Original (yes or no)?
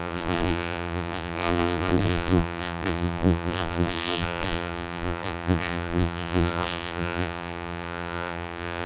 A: no